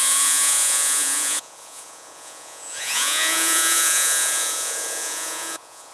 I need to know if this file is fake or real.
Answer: fake